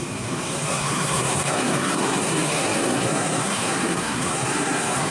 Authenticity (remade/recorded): remade